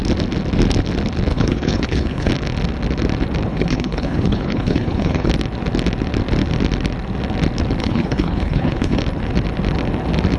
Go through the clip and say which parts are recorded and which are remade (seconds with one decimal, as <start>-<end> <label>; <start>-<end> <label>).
0.0-1.3 recorded; 1.3-2.3 remade; 2.3-3.5 recorded; 3.5-5.3 remade; 5.3-7.8 recorded; 7.8-9.0 remade; 9.0-10.4 recorded